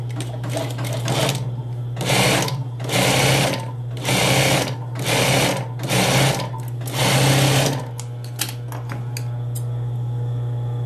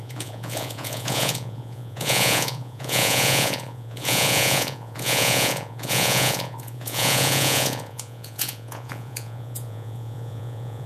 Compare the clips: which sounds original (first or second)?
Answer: first